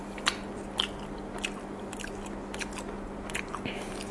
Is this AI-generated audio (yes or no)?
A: no